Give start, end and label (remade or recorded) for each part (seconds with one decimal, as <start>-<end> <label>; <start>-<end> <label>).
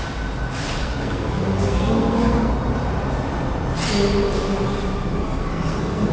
0.0-0.8 recorded; 0.8-2.5 remade; 2.5-5.2 recorded; 5.2-6.1 remade